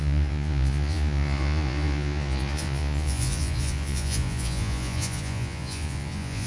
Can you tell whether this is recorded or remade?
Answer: remade